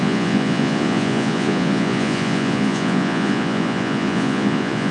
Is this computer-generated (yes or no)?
yes